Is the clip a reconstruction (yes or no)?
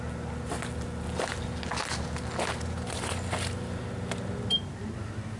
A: no